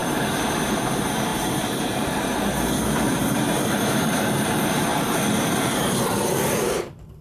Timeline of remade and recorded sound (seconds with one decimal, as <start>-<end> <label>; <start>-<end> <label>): 0.0-4.9 remade; 4.9-5.4 recorded; 5.4-7.2 remade